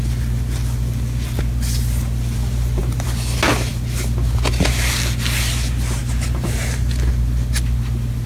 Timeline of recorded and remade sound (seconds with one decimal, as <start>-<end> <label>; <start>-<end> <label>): 0.0-6.0 recorded; 6.0-7.1 remade; 7.1-8.3 recorded